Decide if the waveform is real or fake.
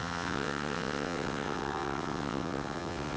fake